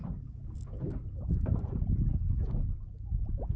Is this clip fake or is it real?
real